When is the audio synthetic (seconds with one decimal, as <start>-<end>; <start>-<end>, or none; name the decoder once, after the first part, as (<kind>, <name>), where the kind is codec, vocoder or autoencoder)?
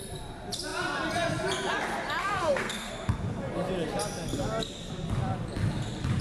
2.2-2.9 (codec, SNAC)